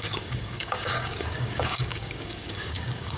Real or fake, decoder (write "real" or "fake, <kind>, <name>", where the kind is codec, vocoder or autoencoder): fake, codec, DAC